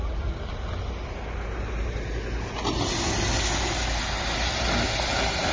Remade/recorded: recorded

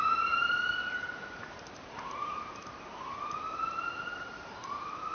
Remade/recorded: remade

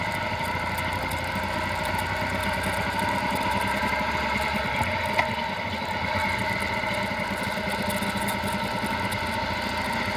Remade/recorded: recorded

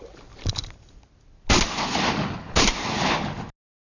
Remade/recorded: recorded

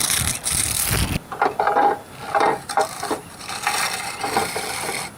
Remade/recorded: recorded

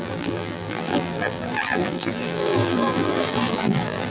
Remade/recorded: remade